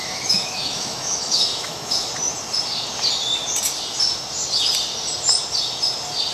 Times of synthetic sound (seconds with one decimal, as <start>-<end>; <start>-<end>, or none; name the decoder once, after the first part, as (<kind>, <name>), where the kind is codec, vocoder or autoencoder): 0.0-2.1 (autoencoder, DAC-VAE)